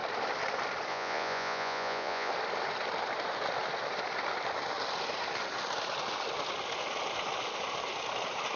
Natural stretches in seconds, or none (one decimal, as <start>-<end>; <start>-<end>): 0.0-0.9; 2.3-8.6